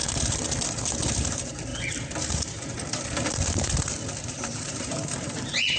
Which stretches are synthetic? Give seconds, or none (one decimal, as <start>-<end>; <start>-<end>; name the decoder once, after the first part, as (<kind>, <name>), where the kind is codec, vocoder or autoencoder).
1.2-1.7 (vocoder, BigVGAN v2); 4.3-5.8